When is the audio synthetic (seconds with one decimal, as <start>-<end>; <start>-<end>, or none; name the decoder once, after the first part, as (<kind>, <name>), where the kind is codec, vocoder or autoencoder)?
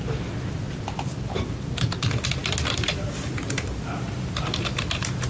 none